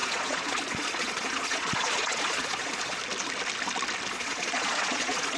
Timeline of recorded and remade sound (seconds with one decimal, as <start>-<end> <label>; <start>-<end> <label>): 0.0-3.0 remade; 3.0-4.1 recorded; 4.1-5.4 remade

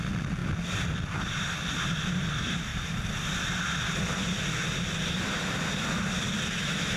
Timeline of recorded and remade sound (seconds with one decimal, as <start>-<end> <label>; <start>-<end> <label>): 0.0-7.0 recorded

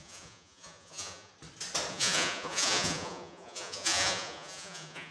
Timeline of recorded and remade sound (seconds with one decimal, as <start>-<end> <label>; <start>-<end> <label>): 0.0-1.3 remade; 1.3-1.9 recorded; 1.9-5.1 remade

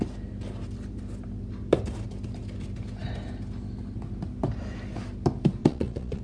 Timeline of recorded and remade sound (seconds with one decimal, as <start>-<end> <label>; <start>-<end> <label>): 0.0-5.6 recorded; 5.6-6.2 remade